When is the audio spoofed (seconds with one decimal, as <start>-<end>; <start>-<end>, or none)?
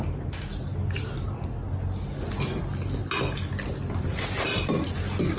none